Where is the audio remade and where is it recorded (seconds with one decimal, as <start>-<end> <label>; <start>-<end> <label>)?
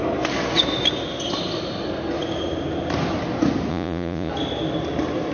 0.0-3.7 recorded; 3.7-4.3 remade; 4.3-5.3 recorded